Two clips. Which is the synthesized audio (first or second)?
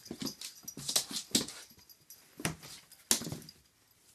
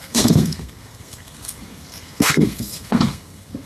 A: second